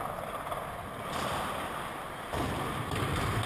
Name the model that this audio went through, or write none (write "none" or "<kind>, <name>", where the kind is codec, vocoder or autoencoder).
none